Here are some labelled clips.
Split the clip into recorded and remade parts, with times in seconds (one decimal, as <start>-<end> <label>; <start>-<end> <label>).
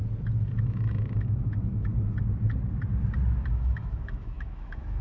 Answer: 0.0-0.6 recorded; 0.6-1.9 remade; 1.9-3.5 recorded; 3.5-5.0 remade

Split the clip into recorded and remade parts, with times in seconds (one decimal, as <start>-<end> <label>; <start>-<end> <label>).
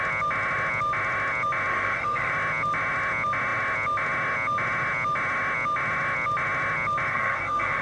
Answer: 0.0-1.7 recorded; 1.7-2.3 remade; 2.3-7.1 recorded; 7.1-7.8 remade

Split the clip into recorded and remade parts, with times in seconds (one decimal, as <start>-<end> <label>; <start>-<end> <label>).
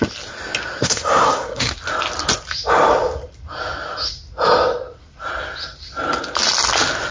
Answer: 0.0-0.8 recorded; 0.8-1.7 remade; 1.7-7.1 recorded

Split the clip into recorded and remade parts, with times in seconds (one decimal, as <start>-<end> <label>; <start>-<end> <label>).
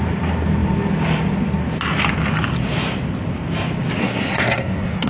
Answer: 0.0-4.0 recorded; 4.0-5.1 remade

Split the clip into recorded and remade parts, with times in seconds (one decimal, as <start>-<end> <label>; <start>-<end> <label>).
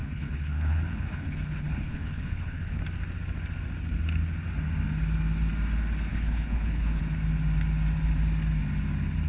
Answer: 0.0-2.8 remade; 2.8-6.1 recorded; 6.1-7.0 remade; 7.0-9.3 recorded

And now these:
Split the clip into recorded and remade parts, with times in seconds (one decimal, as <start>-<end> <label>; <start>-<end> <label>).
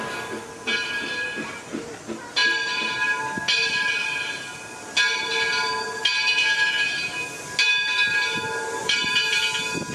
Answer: 0.0-8.8 recorded; 8.8-9.4 remade; 9.4-9.9 recorded